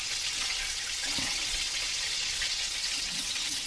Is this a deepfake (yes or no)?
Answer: yes